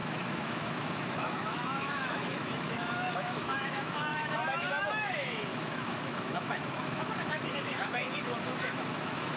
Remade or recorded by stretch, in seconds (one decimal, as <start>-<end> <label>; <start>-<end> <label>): 0.0-9.4 remade